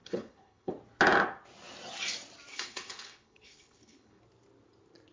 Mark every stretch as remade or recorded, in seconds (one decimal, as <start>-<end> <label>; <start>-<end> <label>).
0.0-0.7 remade; 0.7-2.5 recorded; 2.5-4.2 remade; 4.2-5.1 recorded